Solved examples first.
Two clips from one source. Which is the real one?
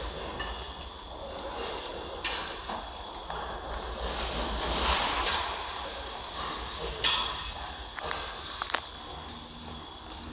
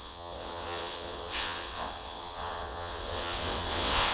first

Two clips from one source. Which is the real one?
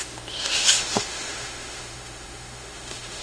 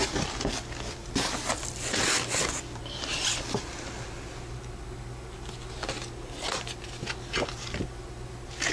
second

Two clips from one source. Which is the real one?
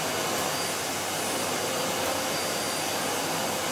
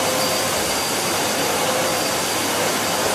first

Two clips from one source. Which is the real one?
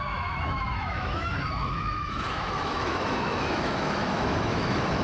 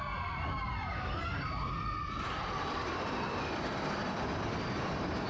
second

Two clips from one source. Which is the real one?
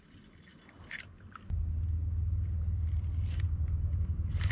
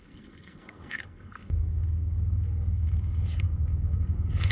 first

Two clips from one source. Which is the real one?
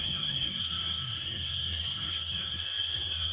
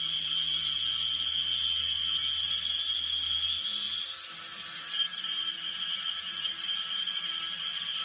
second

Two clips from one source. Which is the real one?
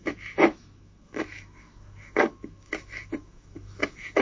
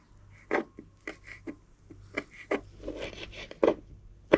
second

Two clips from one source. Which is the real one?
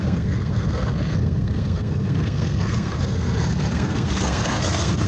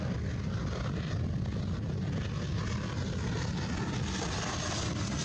second